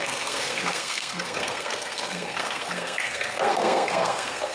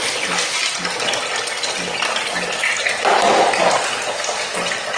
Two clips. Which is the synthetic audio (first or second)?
first